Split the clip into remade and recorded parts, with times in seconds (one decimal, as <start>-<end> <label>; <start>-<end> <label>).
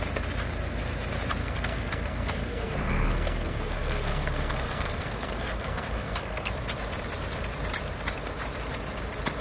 0.0-1.4 recorded; 1.4-6.5 remade; 6.5-9.4 recorded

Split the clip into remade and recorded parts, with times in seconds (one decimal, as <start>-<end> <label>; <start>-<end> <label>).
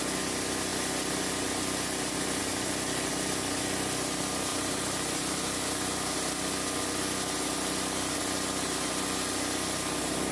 0.0-4.5 recorded; 4.5-5.7 remade; 5.7-10.3 recorded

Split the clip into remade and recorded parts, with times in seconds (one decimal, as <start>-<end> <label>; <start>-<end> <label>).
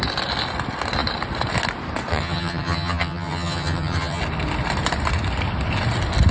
0.0-2.1 recorded; 2.1-4.2 remade; 4.2-6.3 recorded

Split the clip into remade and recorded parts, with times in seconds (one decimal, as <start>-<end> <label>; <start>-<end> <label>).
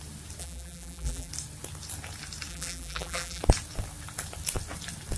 0.0-0.4 recorded; 0.4-1.3 remade; 1.3-2.5 recorded; 2.5-3.4 remade; 3.4-5.2 recorded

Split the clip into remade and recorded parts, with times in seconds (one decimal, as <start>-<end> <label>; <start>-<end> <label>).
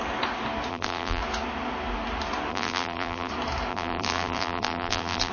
0.0-0.7 recorded; 0.7-1.2 remade; 1.2-2.5 recorded; 2.5-3.3 remade; 3.3-3.7 recorded; 3.7-5.3 remade